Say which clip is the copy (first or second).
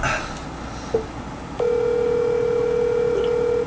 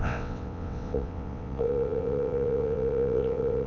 second